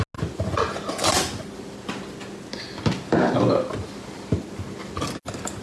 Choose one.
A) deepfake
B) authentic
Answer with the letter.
B